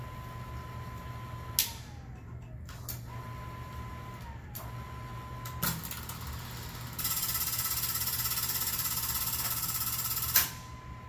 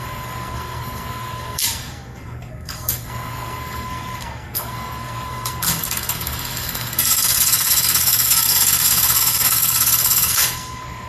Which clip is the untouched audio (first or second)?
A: first